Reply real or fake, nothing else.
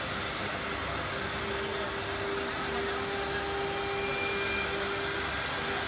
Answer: real